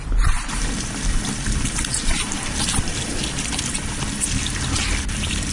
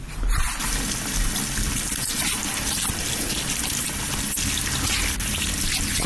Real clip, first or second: second